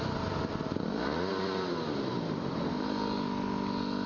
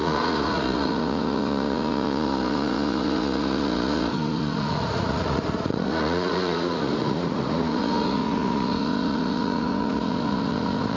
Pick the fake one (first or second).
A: second